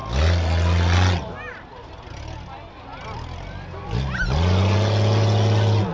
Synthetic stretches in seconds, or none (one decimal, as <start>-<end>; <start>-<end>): none